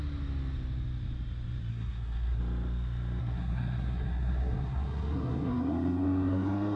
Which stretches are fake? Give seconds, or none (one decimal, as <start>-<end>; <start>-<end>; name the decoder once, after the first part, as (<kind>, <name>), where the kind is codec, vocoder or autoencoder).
1.7-2.4 (codec, SNAC); 3.2-6.8